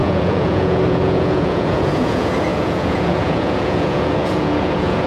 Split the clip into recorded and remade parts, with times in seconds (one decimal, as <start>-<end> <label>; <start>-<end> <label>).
0.0-5.1 remade

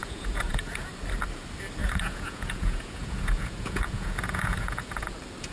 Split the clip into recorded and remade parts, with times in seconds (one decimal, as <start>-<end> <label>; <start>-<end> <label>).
0.0-0.9 remade; 0.9-1.8 recorded; 1.8-5.1 remade; 5.1-5.5 recorded

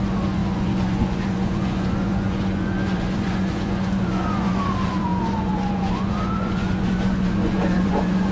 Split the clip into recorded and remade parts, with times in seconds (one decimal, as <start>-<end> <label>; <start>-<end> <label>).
0.0-8.3 remade

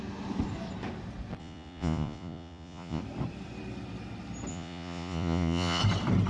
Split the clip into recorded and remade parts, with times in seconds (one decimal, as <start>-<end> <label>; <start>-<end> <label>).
0.0-1.4 recorded; 1.4-3.0 remade; 3.0-4.5 recorded; 4.5-5.8 remade; 5.8-6.3 recorded

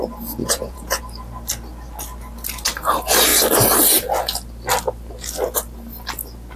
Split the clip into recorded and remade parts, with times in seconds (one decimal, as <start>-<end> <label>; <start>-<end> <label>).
0.0-0.4 recorded; 0.4-1.0 remade; 1.0-6.6 recorded

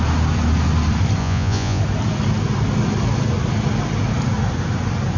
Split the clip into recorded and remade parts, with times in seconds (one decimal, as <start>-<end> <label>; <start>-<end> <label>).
0.0-1.2 recorded; 1.2-1.8 remade; 1.8-5.2 recorded